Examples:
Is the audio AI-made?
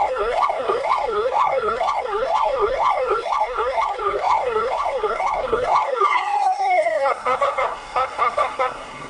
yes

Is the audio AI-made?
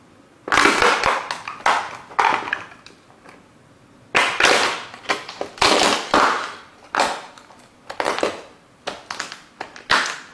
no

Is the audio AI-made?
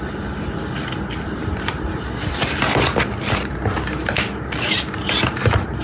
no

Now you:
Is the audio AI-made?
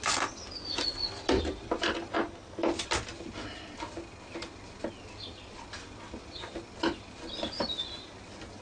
no